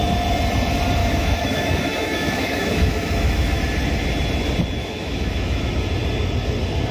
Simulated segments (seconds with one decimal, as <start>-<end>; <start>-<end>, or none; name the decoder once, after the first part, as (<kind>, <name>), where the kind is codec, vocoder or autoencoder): 1.0-3.6 (autoencoder, DAC-VAE); 4.8-5.7